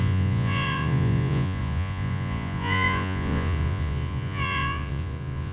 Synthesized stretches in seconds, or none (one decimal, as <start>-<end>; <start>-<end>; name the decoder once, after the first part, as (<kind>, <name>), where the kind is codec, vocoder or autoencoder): 0.0-5.5 (vocoder, Vocos)

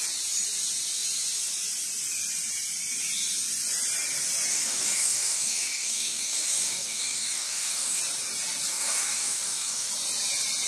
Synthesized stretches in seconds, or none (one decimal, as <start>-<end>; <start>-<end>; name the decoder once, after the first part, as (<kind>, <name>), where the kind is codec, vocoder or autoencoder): 4.5-8.0 (codec, DAC); 8.7-9.9

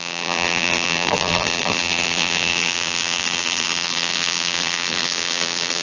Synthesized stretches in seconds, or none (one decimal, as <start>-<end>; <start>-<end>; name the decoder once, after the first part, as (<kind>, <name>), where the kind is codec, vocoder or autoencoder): 0.0-5.8 (vocoder, BigVGAN v2)

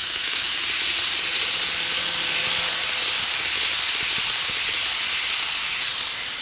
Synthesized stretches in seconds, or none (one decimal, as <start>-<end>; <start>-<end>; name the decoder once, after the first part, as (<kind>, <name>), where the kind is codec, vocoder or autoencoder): 0.0-0.5 (autoencoder, DAC-VAE)